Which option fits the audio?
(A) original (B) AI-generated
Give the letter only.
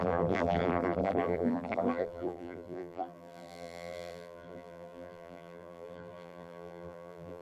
B